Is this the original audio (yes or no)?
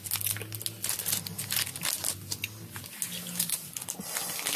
yes